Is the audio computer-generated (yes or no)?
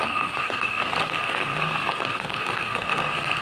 yes